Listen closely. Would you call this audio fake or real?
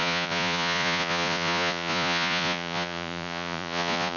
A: fake